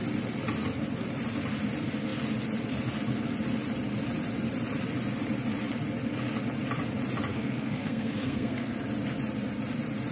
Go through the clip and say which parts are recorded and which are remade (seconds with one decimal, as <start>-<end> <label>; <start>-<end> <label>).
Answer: 0.0-7.3 recorded; 7.3-8.7 remade; 8.7-10.1 recorded